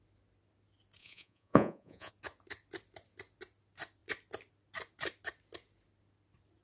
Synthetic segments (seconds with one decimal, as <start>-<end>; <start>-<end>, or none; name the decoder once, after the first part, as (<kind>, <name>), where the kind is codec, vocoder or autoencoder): 1.0-2.1 (vocoder, Vocos)